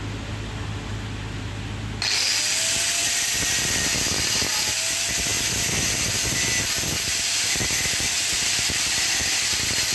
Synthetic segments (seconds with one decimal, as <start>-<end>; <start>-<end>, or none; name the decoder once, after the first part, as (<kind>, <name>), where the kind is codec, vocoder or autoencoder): 3.0-3.9 (vocoder, BigVGAN v2); 7.1-9.3